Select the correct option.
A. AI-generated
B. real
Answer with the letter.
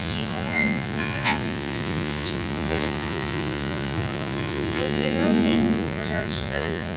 A